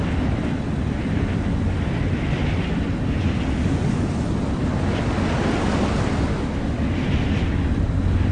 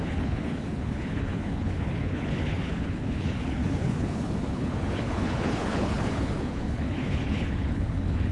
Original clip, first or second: first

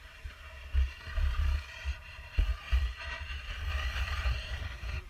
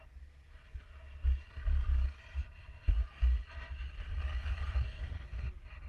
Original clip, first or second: second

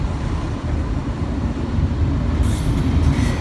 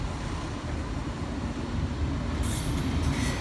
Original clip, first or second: second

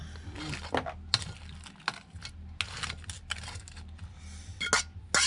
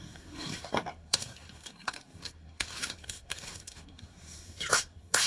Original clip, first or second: first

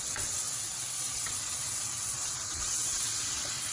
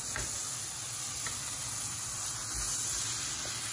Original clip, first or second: second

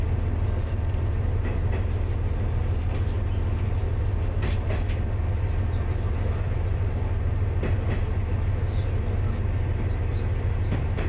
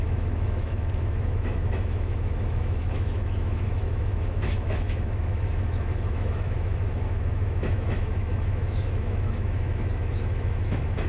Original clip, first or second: first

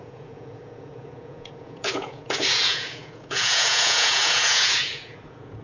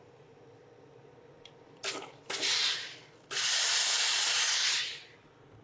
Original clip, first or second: second